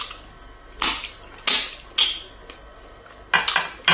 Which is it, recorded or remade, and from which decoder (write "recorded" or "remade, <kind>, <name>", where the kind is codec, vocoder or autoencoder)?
recorded